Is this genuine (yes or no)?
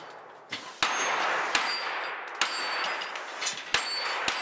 yes